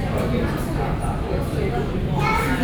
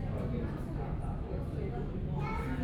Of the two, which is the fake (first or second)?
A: first